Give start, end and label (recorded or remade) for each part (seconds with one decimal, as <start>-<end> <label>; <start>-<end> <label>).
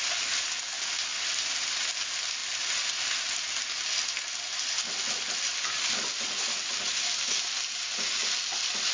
0.0-8.9 recorded